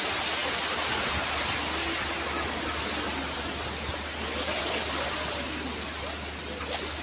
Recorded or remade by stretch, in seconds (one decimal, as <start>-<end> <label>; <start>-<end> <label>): 0.0-7.0 recorded